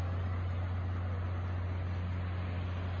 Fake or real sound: real